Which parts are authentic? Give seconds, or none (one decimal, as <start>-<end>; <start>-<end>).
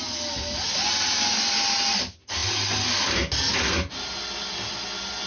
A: 0.0-5.3